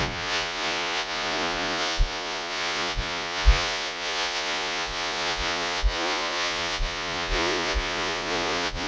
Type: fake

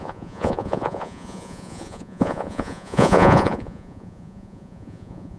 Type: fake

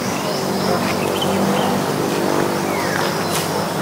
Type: real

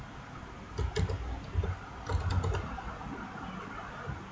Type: real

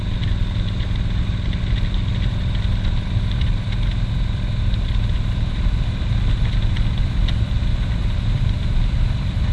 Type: real